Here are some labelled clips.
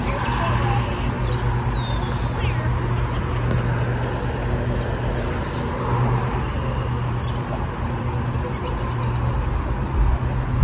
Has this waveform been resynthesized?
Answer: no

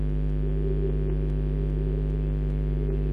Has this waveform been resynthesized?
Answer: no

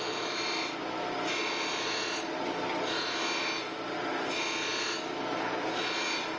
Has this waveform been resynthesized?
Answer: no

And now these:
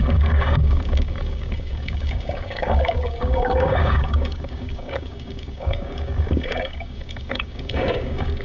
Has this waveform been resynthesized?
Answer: yes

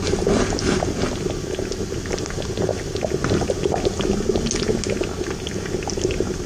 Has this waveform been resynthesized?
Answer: no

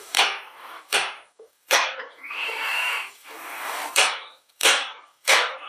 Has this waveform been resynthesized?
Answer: yes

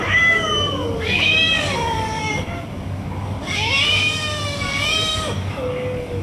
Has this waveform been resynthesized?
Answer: yes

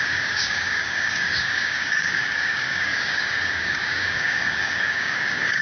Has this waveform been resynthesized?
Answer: yes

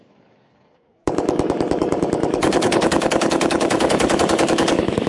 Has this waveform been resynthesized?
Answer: yes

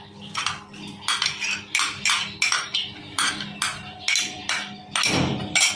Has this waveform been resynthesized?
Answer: no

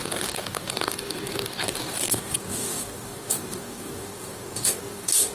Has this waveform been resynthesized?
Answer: yes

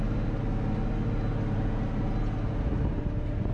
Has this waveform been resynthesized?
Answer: no